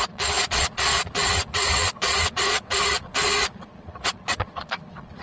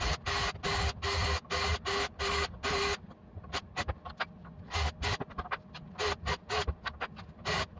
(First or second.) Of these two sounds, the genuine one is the second